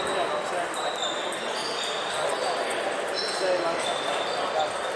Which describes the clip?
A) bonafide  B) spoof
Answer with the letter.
A